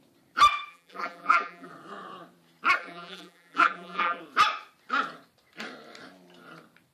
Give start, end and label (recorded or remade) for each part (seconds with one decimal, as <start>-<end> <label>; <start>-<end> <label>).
0.0-0.7 recorded; 0.7-1.7 remade; 1.7-2.8 recorded; 2.8-4.2 remade; 4.2-6.9 recorded